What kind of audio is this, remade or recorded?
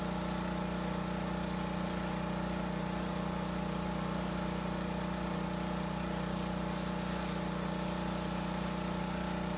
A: recorded